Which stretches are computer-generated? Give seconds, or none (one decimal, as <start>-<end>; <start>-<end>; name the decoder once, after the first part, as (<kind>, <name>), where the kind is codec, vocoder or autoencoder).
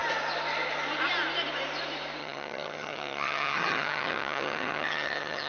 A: 2.2-5.5 (vocoder, HiFi-GAN)